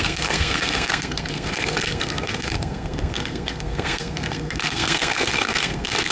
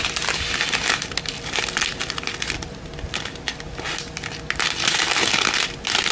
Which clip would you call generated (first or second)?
first